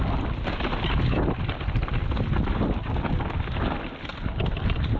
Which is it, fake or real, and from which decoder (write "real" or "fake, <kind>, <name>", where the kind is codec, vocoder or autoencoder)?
real